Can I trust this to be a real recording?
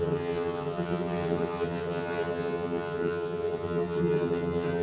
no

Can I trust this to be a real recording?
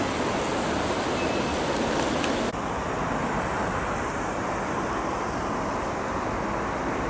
yes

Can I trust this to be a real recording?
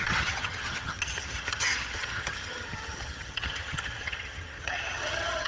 no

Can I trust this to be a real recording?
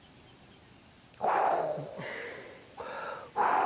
yes